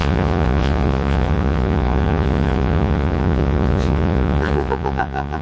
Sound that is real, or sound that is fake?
fake